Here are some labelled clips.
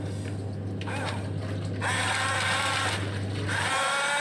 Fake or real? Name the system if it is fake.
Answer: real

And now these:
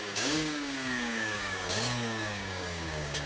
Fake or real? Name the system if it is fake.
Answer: fake, codec, DAC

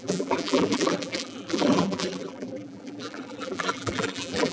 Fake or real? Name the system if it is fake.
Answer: fake, vocoder, BigVGAN v2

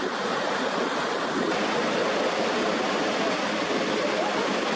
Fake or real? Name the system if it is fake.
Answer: real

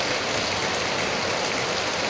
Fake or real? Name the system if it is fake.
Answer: real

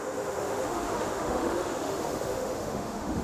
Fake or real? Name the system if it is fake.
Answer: fake, autoencoder, DAC-VAE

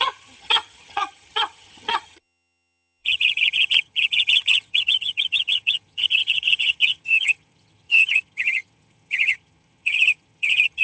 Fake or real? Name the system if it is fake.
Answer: fake, vocoder, HiFi-GAN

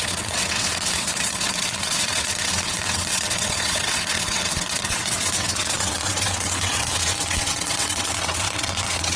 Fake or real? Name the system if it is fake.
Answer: fake, vocoder, WaveNeXt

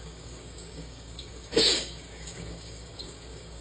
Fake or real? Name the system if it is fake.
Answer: fake, codec, DAC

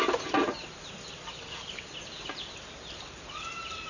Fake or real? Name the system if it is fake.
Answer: real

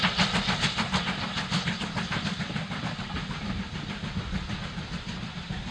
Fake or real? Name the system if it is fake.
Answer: real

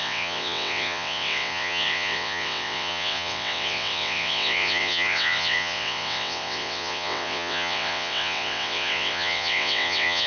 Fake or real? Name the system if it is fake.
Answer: fake, vocoder, WaveNeXt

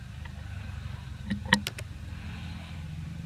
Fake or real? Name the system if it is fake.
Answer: real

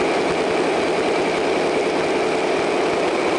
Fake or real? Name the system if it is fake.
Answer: real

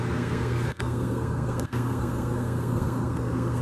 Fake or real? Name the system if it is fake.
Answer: fake, codec, SNAC